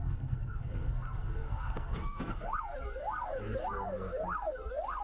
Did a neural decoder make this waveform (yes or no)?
yes